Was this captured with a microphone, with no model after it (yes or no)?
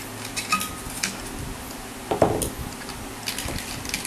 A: yes